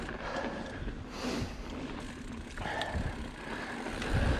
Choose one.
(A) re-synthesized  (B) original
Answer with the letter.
A